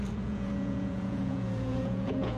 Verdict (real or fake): fake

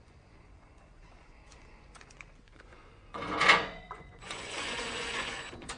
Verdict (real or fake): fake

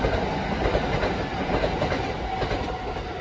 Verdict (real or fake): real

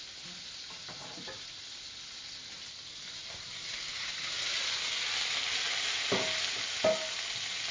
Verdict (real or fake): real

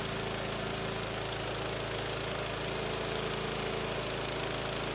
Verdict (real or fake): real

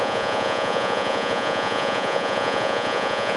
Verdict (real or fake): fake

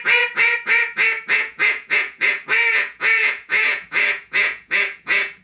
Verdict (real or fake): fake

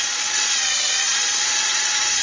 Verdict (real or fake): fake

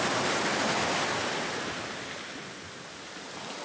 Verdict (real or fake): real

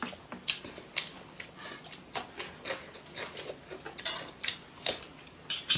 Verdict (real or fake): real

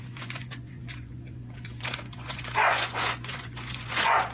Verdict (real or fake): fake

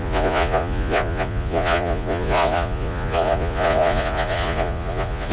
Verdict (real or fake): fake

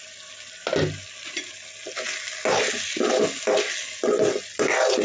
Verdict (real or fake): real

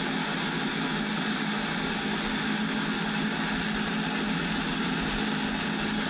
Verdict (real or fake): real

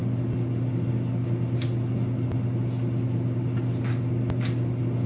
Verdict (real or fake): real